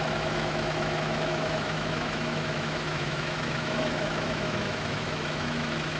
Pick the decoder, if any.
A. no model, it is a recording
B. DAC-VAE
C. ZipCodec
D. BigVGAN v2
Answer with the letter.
B